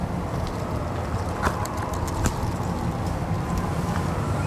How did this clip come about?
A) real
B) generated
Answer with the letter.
A